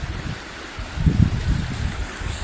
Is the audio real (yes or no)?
yes